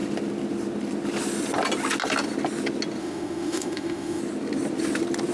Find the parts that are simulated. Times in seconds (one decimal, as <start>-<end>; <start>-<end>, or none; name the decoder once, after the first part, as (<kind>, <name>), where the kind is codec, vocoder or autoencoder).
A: 3.0-4.2 (autoencoder, DAC-VAE)